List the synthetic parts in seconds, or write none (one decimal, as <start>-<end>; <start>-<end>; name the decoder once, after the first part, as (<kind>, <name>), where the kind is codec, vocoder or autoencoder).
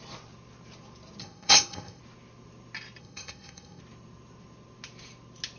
1.2-2.0 (codec, ZipCodec); 3.0-3.8